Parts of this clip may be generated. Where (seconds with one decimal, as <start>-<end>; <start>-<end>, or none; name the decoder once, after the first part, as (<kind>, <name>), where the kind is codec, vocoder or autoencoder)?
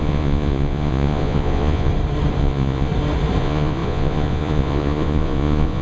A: 0.0-1.9 (vocoder, Vocos); 2.4-2.9; 3.4-5.8